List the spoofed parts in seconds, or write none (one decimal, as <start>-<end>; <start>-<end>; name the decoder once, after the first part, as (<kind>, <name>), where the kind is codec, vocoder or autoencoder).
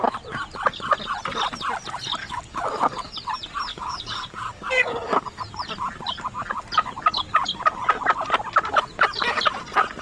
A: 2.2-3.1 (codec, DAC); 3.7-5.4